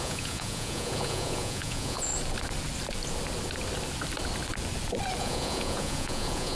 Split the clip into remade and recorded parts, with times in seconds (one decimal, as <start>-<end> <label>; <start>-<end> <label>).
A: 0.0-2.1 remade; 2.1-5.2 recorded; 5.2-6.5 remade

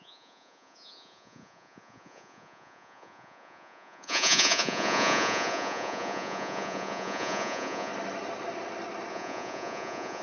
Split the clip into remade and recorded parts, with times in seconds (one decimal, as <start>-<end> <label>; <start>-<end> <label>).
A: 0.0-7.9 remade; 7.9-9.1 recorded; 9.1-10.2 remade

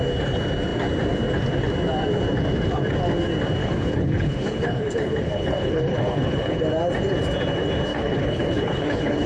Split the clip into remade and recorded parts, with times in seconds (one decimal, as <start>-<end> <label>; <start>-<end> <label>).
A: 0.0-3.6 recorded; 3.6-6.6 remade; 6.6-7.9 recorded; 7.9-9.3 remade